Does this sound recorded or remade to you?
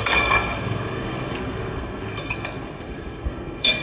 remade